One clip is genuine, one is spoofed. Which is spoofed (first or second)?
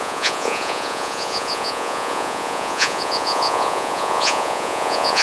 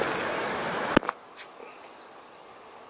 first